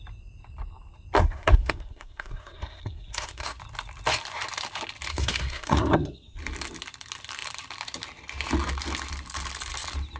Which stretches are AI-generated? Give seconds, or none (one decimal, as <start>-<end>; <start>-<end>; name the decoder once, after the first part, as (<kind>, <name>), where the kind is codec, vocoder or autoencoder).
1.2-3.6 (codec, SNAC); 5.1-6.4